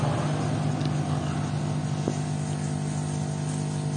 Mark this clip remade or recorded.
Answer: recorded